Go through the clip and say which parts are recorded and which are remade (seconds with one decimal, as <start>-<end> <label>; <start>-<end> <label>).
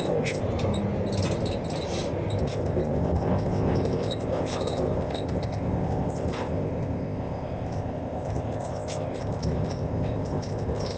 0.0-0.4 remade; 0.4-2.4 recorded; 2.4-11.0 remade